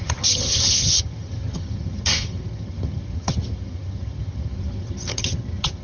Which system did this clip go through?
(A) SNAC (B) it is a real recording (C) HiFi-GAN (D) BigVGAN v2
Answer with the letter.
C